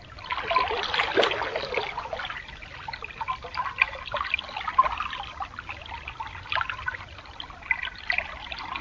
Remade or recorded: recorded